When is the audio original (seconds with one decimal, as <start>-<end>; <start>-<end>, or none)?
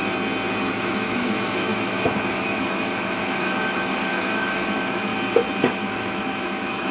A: 0.0-0.8; 5.1-5.6